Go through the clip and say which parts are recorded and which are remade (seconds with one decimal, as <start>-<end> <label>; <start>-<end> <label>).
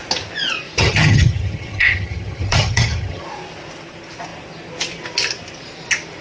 0.0-0.8 recorded; 0.8-3.2 remade; 3.2-6.2 recorded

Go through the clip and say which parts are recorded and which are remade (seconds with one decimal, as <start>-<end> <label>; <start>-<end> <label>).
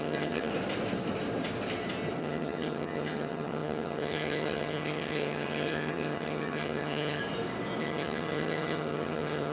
0.0-0.5 remade; 0.5-2.2 recorded; 2.2-7.2 remade; 7.2-7.8 recorded; 7.8-9.5 remade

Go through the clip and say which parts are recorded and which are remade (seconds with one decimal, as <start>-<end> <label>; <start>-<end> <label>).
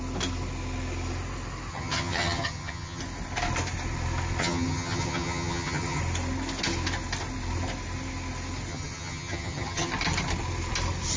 0.0-1.7 recorded; 1.7-3.0 remade; 3.0-4.4 recorded; 4.4-6.0 remade; 6.0-8.7 recorded; 8.7-9.9 remade; 9.9-11.2 recorded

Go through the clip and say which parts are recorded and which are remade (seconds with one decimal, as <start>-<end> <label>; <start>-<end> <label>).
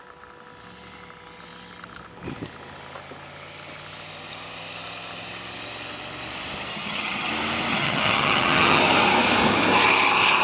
0.0-6.7 recorded; 6.7-7.3 remade; 7.3-7.7 recorded; 7.7-8.8 remade; 8.8-10.4 recorded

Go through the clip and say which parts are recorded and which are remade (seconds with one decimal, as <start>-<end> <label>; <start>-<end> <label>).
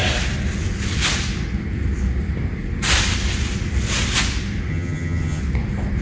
0.0-4.7 recorded; 4.7-5.4 remade; 5.4-6.0 recorded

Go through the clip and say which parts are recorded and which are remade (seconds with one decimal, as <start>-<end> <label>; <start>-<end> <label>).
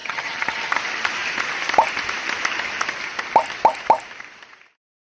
0.0-0.7 remade; 0.7-5.1 recorded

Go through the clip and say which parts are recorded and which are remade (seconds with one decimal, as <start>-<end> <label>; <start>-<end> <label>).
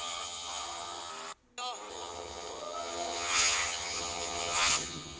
0.0-1.1 remade; 1.1-1.9 recorded; 1.9-5.2 remade